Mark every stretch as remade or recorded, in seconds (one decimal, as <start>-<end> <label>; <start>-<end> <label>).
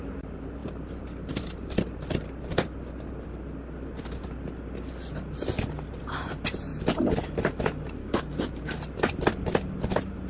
0.0-8.0 recorded; 8.0-8.7 remade; 8.7-10.3 recorded